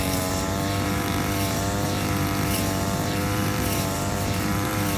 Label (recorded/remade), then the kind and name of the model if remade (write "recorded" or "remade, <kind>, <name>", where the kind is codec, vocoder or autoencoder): remade, vocoder, BigVGAN v2